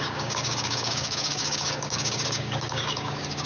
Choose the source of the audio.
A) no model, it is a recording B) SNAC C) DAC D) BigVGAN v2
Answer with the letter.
C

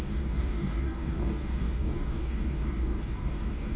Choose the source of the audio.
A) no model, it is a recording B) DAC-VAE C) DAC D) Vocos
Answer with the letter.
C